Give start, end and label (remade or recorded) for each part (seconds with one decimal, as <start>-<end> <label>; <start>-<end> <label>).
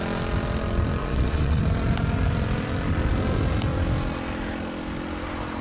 0.0-1.0 recorded; 1.0-1.6 remade; 1.6-5.6 recorded